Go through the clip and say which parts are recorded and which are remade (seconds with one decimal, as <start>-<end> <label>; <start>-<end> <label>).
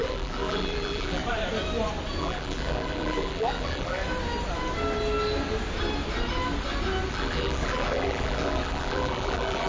0.0-1.2 remade; 1.2-2.2 recorded; 2.2-4.0 remade; 4.0-7.1 recorded; 7.1-9.7 remade